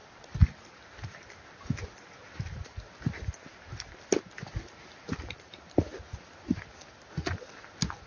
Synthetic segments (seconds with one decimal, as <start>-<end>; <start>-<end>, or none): none